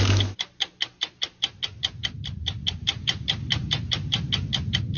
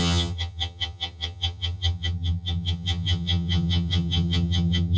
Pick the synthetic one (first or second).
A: second